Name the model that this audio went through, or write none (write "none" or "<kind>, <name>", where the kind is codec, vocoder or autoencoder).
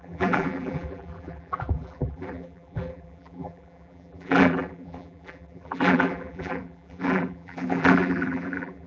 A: vocoder, BigVGAN v2